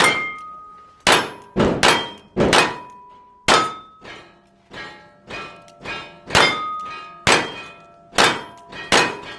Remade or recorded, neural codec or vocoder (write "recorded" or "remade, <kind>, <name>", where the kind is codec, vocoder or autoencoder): recorded